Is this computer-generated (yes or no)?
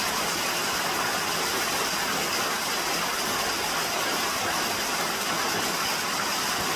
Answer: no